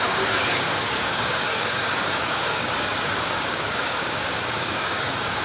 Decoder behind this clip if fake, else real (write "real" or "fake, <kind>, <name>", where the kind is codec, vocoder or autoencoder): fake, codec, DAC